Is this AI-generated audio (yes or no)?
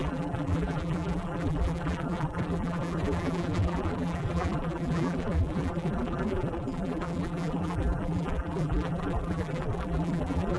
yes